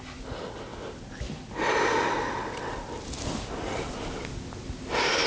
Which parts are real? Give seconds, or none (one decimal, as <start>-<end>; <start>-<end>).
0.0-5.3